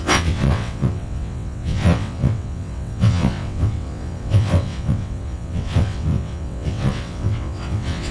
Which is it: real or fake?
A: fake